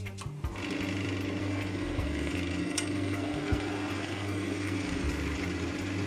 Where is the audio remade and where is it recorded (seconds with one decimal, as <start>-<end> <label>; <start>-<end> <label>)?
0.0-1.4 recorded; 1.4-5.1 remade; 5.1-6.1 recorded